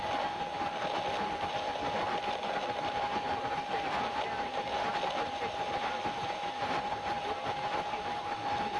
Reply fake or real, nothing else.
real